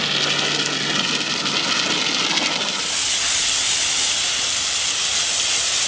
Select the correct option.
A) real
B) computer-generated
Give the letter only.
A